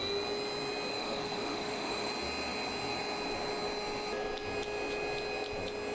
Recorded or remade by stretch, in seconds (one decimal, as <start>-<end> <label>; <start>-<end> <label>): 0.0-0.9 recorded; 0.9-2.1 remade; 2.1-5.9 recorded